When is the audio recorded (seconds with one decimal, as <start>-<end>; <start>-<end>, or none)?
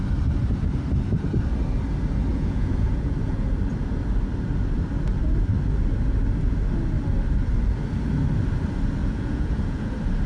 0.0-2.3; 3.5-9.0; 9.9-10.3